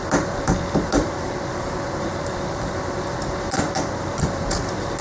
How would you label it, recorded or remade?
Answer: remade